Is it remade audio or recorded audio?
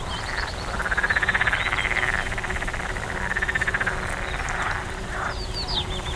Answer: recorded